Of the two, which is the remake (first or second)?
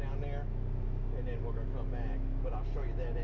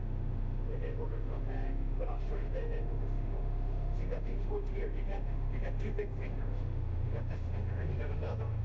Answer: second